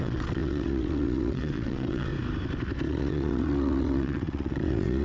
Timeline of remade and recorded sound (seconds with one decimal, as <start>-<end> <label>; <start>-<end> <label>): 0.0-2.1 remade; 2.1-2.9 recorded; 2.9-5.0 remade